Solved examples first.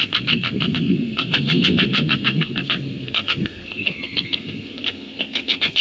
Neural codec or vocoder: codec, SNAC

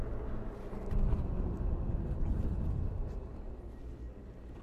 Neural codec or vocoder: none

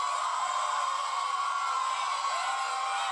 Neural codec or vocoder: none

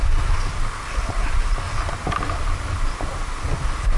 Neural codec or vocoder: none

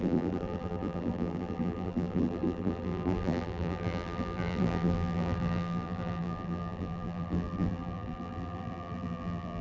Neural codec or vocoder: vocoder, BigVGAN v2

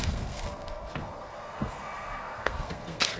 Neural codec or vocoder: codec, SNAC